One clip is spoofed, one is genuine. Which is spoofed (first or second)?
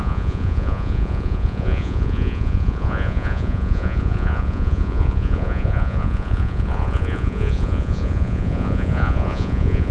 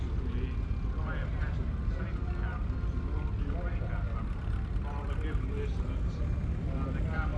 first